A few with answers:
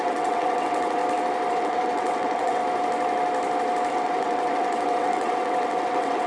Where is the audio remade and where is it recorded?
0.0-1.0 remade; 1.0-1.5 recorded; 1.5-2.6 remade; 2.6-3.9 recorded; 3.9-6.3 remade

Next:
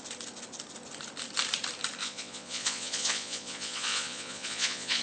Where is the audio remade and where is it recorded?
0.0-2.0 recorded; 2.0-5.0 remade

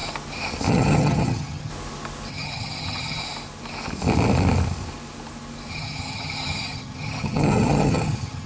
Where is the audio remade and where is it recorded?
0.0-0.7 recorded; 0.7-1.7 remade; 1.7-2.3 recorded; 2.3-3.2 remade; 3.2-5.7 recorded; 5.7-8.5 remade

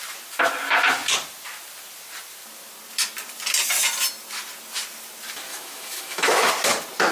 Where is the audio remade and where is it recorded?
0.0-5.5 recorded; 5.5-6.5 remade; 6.5-7.1 recorded